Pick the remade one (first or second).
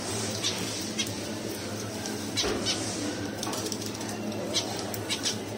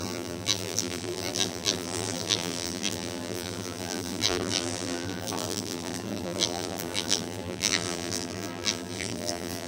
second